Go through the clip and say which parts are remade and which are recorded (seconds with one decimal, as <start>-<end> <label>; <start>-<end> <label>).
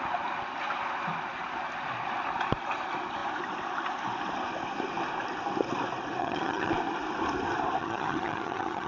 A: 0.0-6.2 recorded; 6.2-6.7 remade; 6.7-7.8 recorded; 7.8-8.9 remade